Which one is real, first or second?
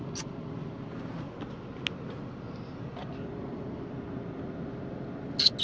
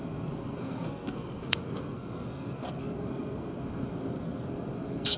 first